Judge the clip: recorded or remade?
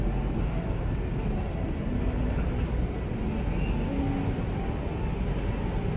recorded